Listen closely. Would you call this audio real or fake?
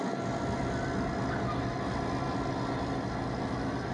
real